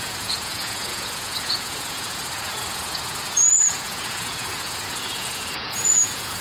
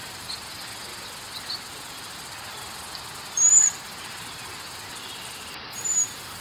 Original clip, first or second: second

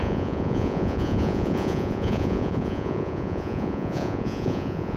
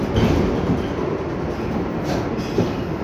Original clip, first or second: second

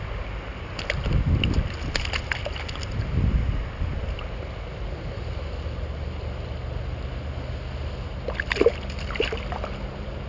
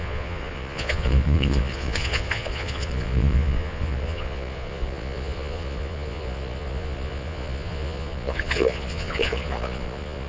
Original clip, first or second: first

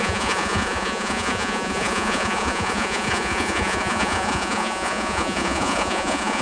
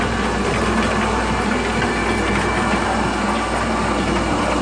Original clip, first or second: second